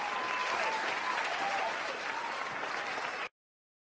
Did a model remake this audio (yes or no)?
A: no